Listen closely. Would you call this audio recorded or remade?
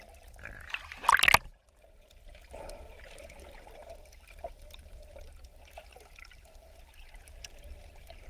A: recorded